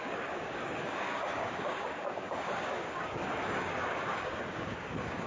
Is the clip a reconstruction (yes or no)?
yes